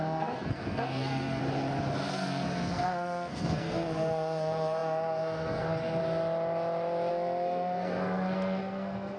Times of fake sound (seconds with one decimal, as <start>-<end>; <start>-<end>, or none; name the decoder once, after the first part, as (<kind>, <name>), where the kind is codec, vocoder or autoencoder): 0.0-1.4 (codec, SNAC); 2.1-6.0; 7.1-9.2